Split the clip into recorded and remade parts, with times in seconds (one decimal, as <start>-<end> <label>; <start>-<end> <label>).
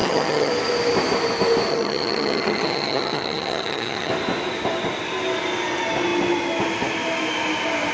0.0-0.5 remade; 0.5-1.7 recorded; 1.7-4.1 remade; 4.1-7.9 recorded